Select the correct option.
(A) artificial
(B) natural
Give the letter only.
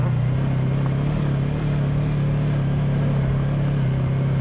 B